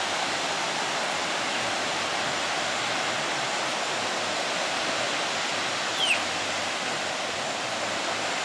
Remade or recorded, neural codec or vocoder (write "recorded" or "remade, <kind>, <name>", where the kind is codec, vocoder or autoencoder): recorded